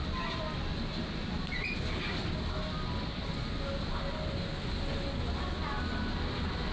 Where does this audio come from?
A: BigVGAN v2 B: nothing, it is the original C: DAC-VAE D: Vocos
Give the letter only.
B